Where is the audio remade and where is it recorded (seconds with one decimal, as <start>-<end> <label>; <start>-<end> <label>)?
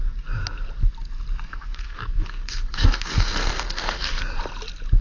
0.0-1.5 recorded; 1.5-4.2 remade; 4.2-5.0 recorded